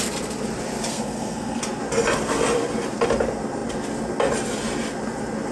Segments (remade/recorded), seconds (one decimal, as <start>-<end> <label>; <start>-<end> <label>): 0.0-0.9 recorded; 0.9-1.6 remade; 1.6-5.5 recorded